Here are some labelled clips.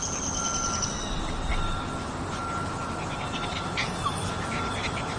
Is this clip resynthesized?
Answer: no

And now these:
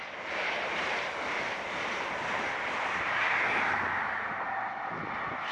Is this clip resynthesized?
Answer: no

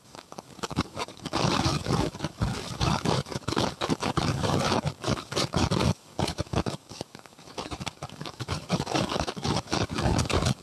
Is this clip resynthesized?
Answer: yes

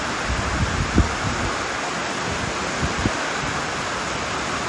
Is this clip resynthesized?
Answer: no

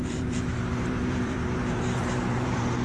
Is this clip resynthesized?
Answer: yes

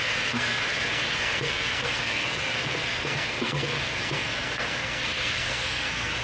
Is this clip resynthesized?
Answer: yes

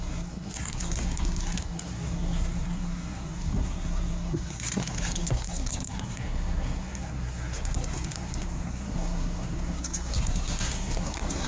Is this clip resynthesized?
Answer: yes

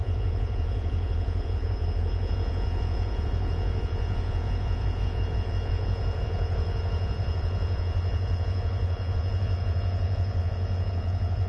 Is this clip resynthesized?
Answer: yes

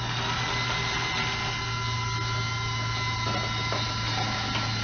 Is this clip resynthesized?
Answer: no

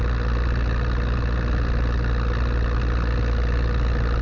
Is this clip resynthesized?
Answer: no